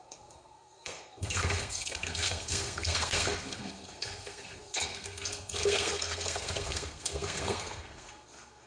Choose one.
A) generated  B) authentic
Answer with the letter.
A